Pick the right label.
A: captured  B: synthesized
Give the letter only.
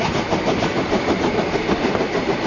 A